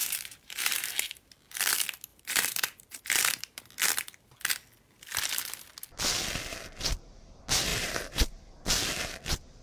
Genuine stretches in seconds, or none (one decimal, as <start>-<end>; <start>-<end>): 1.3-2.1; 3.6-7.7; 8.4-9.6